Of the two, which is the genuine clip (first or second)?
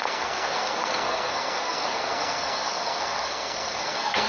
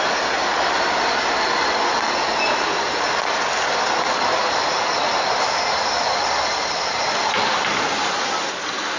second